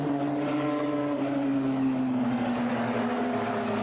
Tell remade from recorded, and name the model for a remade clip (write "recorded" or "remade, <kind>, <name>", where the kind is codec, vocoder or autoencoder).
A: remade, codec, DAC